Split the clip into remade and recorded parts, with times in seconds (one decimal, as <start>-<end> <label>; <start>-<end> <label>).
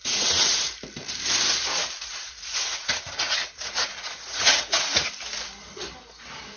0.0-0.6 remade; 0.6-1.6 recorded; 1.6-5.1 remade; 5.1-6.6 recorded